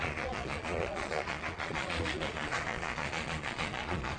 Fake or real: fake